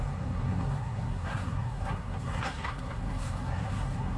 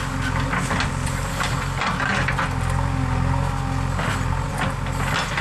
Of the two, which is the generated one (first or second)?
first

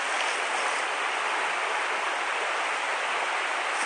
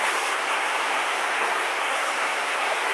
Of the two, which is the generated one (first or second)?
second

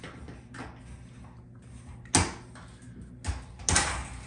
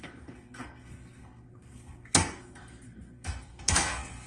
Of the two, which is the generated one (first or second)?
second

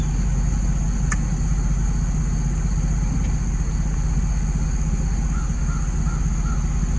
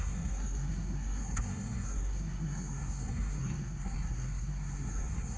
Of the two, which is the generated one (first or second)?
second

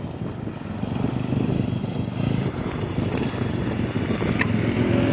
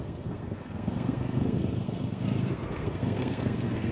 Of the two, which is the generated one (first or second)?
second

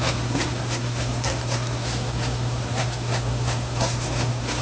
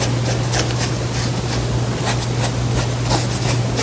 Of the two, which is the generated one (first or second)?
first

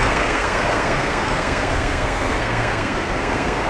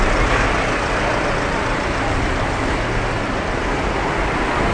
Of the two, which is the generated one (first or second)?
first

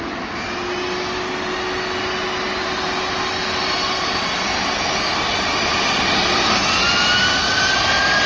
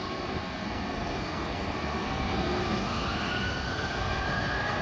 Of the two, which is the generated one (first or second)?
second